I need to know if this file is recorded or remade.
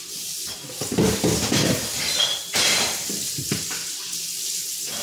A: remade